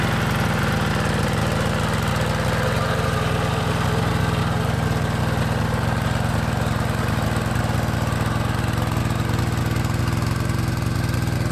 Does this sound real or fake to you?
real